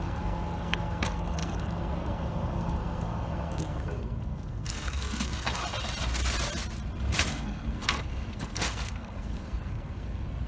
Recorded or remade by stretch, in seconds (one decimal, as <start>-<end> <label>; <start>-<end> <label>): 0.0-5.6 remade; 5.6-7.3 recorded; 7.3-10.5 remade